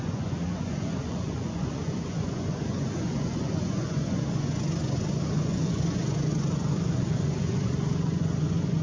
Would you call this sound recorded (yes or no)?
no